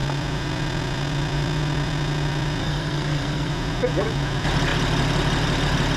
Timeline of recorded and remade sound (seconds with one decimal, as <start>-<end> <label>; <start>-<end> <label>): 0.0-2.6 recorded; 2.6-3.5 remade; 3.5-6.0 recorded